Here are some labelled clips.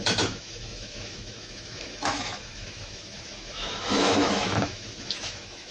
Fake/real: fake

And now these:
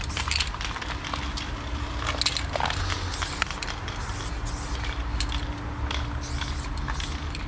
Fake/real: real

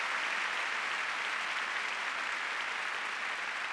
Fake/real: real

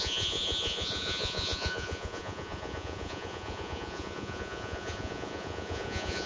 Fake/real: fake